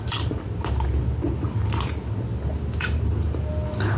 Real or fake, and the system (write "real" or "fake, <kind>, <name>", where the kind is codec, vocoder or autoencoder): real